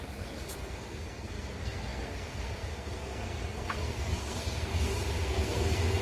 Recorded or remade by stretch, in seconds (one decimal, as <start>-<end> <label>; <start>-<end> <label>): 0.0-6.0 remade